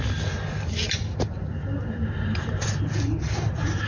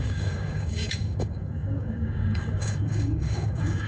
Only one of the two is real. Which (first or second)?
first